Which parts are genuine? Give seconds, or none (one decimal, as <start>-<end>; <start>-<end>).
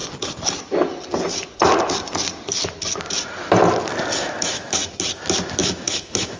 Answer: 0.0-4.2; 4.9-5.6